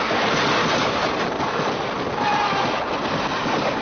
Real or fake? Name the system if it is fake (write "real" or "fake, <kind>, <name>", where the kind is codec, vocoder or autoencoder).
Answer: real